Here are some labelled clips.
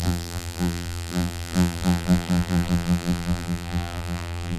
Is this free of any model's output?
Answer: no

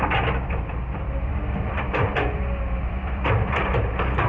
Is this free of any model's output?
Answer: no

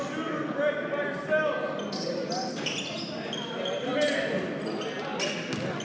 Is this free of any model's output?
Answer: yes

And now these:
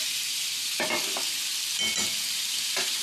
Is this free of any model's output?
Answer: no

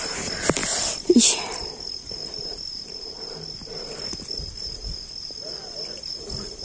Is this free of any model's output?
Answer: no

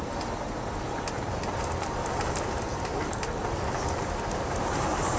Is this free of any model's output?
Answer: yes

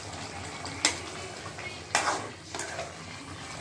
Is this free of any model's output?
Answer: yes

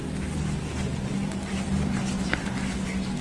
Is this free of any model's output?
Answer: yes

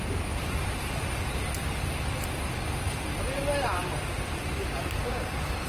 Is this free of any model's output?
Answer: yes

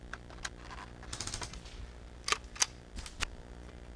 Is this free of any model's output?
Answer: yes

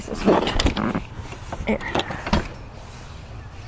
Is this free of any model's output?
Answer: yes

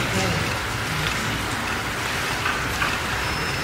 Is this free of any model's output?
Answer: yes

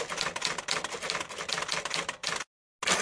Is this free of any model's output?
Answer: yes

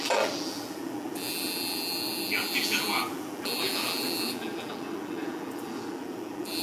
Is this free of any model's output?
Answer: no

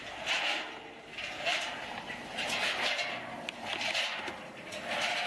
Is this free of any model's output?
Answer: no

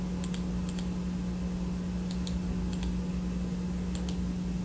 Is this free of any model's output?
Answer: yes